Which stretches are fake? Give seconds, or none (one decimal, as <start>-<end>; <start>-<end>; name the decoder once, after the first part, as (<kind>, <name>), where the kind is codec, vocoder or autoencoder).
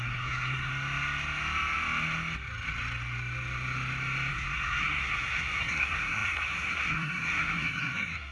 0.0-0.7 (codec, SNAC); 4.3-8.3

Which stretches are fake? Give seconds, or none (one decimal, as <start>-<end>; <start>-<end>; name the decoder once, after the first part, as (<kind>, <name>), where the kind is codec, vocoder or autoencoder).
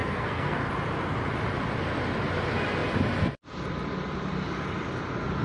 0.0-0.7 (codec, SNAC)